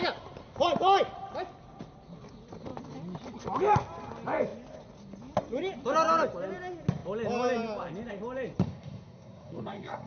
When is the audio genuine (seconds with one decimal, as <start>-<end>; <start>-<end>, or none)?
0.0-8.6